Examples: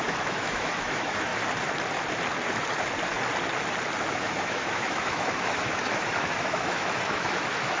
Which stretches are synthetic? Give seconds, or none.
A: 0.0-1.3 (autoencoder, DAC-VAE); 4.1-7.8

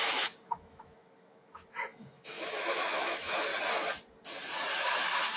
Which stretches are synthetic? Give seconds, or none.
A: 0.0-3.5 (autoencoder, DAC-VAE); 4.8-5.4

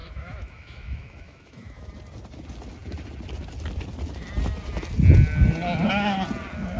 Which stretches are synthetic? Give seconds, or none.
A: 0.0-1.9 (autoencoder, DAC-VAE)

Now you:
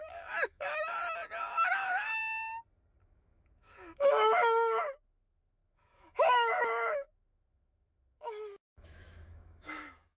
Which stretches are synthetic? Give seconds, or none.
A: 0.0-1.0 (autoencoder, DAC-VAE); 1.5-2.2; 3.0-10.2